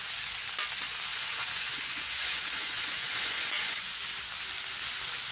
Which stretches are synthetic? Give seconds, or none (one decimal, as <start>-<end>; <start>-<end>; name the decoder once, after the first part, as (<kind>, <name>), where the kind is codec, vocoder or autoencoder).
1.1-4.0 (vocoder, Vocos)